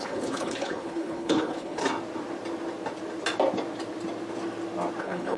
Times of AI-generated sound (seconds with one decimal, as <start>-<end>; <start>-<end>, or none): 0.0-1.8; 5.0-5.4